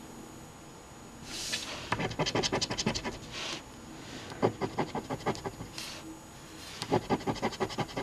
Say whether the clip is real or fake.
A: real